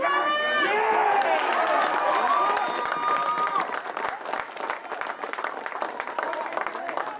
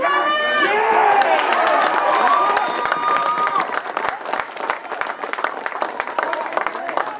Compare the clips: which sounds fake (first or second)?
second